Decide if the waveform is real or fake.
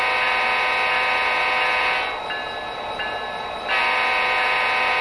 real